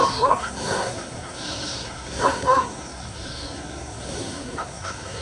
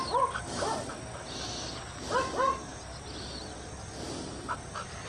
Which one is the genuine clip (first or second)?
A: second